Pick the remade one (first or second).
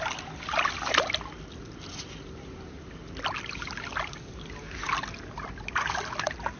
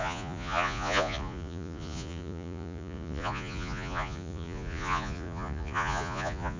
second